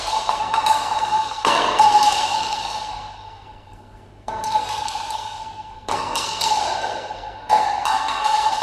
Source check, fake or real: fake